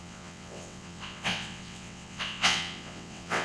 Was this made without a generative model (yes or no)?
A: no